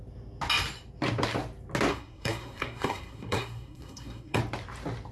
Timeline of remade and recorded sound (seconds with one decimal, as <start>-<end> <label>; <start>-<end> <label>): 0.0-1.9 recorded; 1.9-4.4 remade; 4.4-5.1 recorded